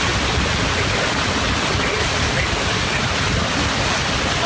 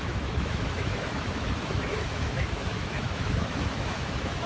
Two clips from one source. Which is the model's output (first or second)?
second